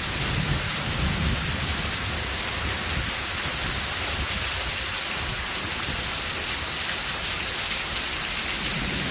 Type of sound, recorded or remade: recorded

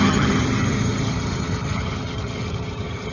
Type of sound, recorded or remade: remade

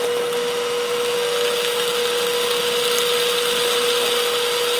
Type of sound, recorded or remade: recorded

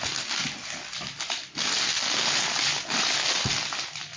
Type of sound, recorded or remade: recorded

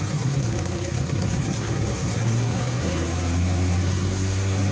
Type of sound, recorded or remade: remade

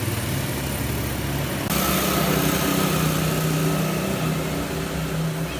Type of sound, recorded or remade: recorded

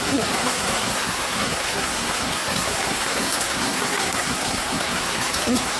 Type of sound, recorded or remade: remade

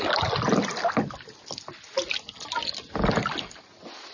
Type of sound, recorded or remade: recorded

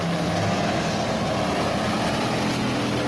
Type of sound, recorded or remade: recorded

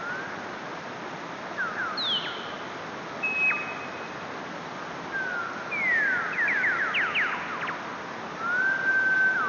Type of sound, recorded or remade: recorded